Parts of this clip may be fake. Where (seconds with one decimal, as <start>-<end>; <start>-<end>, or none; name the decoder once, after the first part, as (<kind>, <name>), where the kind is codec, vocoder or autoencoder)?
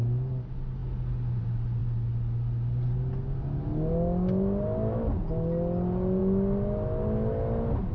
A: none